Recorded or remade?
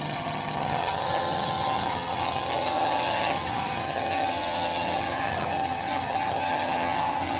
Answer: remade